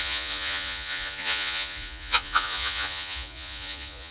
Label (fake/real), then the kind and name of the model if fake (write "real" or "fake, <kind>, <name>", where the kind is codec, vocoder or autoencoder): fake, vocoder, Vocos